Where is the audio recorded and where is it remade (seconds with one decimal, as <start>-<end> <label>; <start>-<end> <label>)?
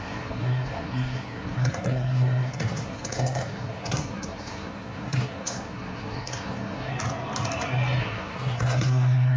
0.0-6.9 remade; 6.9-8.0 recorded; 8.0-9.4 remade